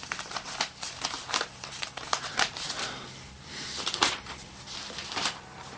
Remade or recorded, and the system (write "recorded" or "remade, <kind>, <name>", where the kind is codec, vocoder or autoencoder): remade, vocoder, BigVGAN v2